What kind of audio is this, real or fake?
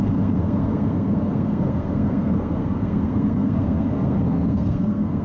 fake